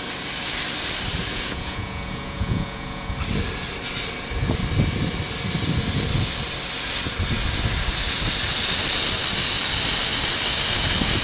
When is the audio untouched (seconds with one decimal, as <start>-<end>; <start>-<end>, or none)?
0.0-1.3; 3.2-11.2